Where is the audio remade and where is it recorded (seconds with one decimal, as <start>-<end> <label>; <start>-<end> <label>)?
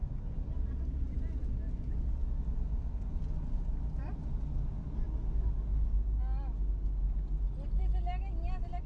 0.0-8.9 recorded